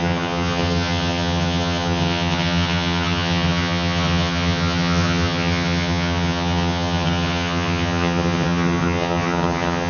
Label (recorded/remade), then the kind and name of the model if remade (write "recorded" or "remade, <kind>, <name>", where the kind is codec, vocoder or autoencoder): remade, vocoder, HiFi-GAN